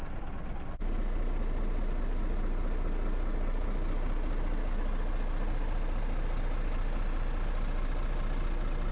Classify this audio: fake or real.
real